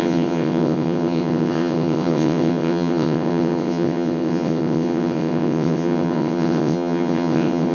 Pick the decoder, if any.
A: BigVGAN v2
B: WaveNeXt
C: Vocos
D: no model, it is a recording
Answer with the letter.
B